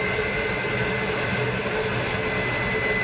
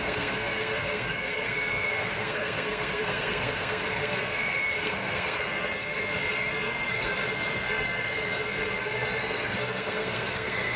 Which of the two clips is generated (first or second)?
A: second